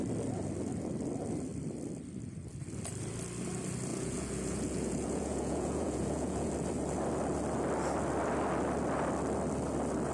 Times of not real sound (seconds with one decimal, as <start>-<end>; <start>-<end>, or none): 3.9-6.5